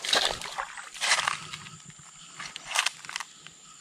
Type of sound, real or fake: real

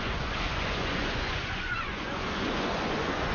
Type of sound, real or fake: fake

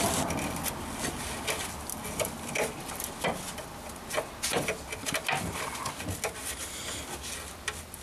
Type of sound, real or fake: real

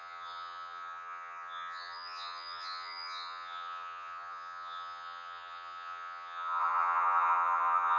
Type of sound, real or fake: fake